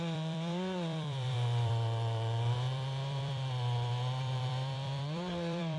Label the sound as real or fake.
fake